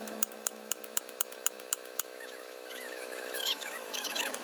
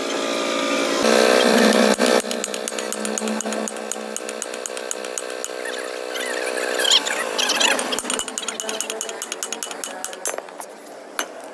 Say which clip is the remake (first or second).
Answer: first